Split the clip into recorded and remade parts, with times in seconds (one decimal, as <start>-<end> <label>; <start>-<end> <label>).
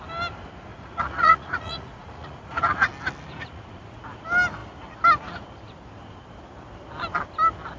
0.0-0.7 recorded; 0.7-2.9 remade; 2.9-3.4 recorded; 3.4-4.0 remade; 4.0-7.8 recorded